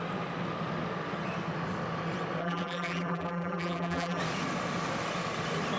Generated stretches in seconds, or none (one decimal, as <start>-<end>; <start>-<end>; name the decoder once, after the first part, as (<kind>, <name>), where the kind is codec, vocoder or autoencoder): 2.4-4.2 (vocoder, BigVGAN v2)